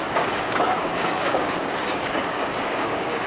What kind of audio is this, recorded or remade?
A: remade